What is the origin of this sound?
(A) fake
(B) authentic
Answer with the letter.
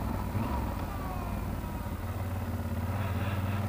B